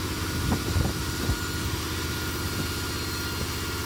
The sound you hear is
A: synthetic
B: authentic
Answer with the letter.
B